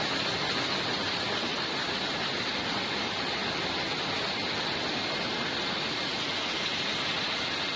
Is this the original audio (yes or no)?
yes